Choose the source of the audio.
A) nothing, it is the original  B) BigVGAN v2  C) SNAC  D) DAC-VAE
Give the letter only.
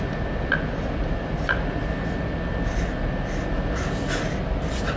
A